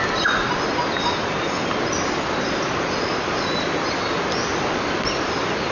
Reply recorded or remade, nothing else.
recorded